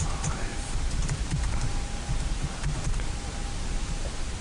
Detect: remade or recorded remade